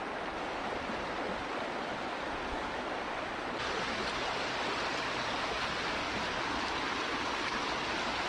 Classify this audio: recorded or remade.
recorded